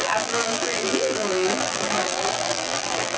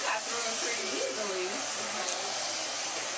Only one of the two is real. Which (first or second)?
second